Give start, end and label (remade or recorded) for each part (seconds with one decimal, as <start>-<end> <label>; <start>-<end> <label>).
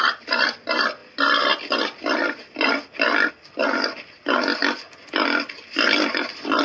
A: 0.0-6.6 recorded